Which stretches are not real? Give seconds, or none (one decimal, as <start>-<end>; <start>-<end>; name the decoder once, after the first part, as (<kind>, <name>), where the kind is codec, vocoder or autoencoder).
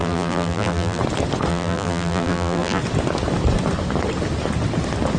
0.0-1.0 (vocoder, BigVGAN v2); 1.5-2.8